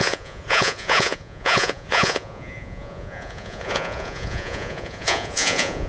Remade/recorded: remade